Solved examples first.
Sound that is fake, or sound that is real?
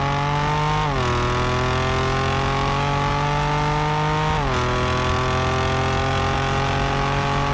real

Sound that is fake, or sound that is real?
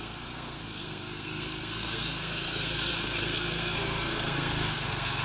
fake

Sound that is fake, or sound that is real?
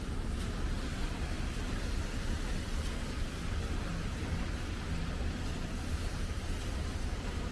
real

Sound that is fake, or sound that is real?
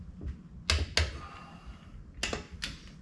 real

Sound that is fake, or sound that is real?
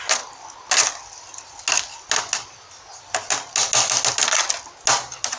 real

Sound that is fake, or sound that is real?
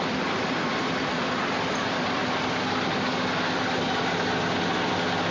real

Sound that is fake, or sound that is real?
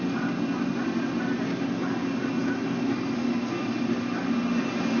real